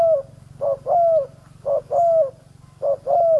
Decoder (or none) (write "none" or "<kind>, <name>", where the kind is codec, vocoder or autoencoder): none